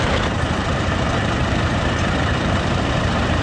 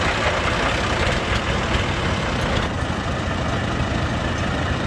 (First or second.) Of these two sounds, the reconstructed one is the first